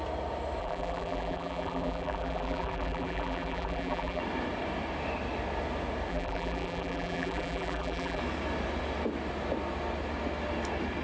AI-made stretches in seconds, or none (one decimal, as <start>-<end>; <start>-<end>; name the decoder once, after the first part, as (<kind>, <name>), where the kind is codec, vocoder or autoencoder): 0.6-4.2 (vocoder, BigVGAN v2); 6.1-8.2